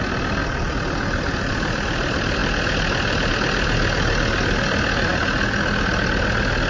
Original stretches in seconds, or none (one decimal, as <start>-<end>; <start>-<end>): 0.0-6.7